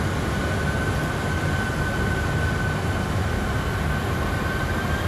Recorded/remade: recorded